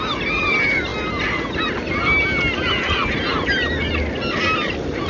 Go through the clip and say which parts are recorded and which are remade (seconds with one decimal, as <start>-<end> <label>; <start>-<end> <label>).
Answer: 0.0-5.1 recorded